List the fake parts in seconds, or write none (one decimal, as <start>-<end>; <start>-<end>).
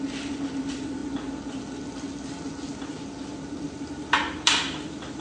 none